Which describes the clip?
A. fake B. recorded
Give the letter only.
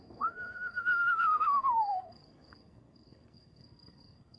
A